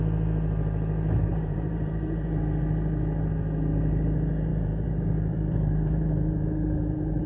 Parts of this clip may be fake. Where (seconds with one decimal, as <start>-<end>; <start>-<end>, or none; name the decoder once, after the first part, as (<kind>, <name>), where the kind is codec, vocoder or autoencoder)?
1.3-2.4 (vocoder, BigVGAN v2); 4.5-7.3